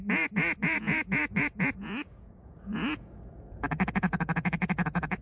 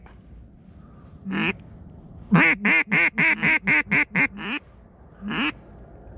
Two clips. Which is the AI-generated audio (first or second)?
first